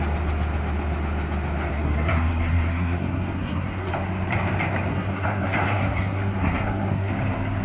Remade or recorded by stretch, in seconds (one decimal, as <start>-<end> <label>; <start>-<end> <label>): 0.0-1.7 recorded; 1.7-3.9 remade; 3.9-4.9 recorded; 4.9-7.1 remade; 7.1-7.6 recorded